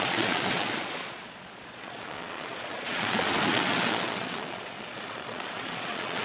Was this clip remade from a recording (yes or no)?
yes